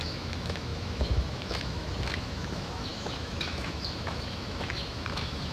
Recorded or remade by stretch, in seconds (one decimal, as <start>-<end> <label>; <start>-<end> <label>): 0.0-5.5 remade